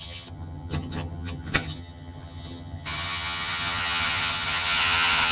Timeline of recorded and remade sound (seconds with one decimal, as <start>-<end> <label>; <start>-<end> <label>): 0.0-5.3 remade